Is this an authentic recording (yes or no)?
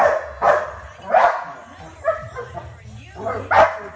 yes